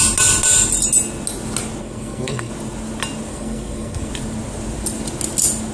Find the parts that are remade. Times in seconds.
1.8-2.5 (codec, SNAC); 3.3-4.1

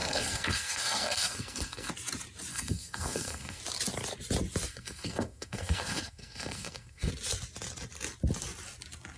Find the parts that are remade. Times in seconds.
0.0-1.9 (codec, SNAC); 2.5-3.6; 4.7-7.1

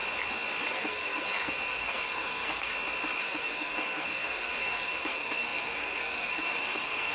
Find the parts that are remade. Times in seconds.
0.7-2.7 (codec, SNAC); 3.2-7.1

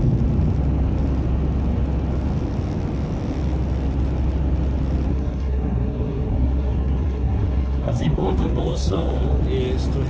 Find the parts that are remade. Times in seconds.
5.1-9.4 (codec, SNAC)

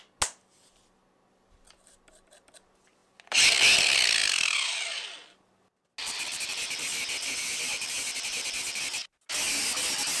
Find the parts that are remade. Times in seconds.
none

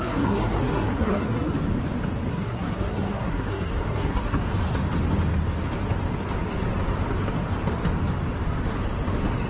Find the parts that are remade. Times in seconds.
0.0-1.5 (codec, SNAC); 2.3-4.4